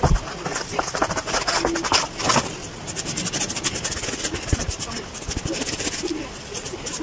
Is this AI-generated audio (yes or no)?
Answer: no